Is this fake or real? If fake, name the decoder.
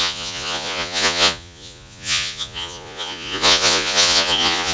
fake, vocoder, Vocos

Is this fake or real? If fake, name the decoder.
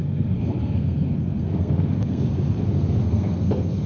fake, codec, SNAC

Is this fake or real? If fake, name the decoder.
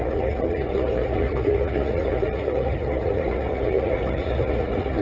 fake, vocoder, Vocos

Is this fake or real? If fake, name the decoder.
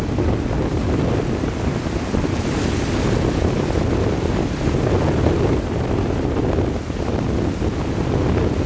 real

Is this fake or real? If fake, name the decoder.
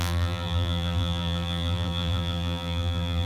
fake, vocoder, BigVGAN v2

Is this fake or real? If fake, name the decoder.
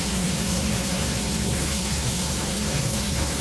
fake, codec, SNAC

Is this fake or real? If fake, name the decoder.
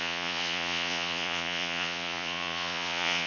fake, vocoder, Vocos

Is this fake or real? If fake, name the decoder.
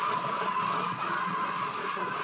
fake, vocoder, Vocos